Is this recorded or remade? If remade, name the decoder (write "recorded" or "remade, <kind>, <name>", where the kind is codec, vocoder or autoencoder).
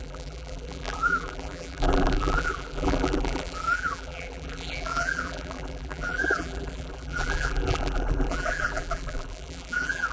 remade, vocoder, BigVGAN v2